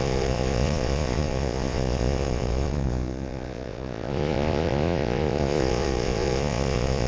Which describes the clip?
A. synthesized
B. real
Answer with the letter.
A